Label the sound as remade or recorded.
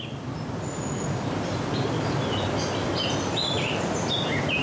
recorded